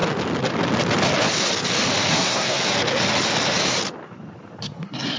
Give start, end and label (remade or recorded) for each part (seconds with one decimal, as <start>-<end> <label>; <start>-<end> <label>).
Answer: 0.0-2.1 recorded; 2.1-2.6 remade; 2.6-4.6 recorded; 4.6-5.2 remade